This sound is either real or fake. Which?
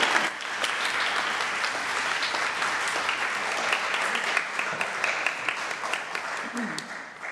real